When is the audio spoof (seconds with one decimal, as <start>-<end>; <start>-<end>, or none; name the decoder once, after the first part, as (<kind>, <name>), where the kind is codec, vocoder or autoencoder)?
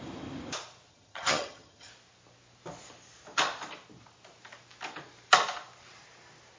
0.9-1.9 (vocoder, HiFi-GAN)